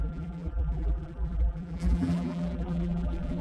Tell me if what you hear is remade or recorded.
remade